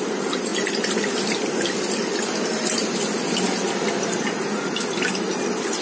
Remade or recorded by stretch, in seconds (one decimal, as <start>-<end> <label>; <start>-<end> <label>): 0.0-5.8 recorded